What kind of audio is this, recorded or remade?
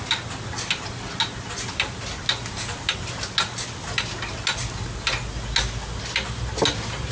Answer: recorded